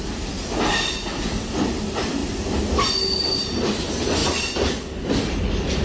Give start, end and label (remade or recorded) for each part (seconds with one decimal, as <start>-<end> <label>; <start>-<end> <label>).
0.0-5.8 recorded